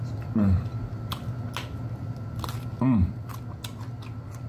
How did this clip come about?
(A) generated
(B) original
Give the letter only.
B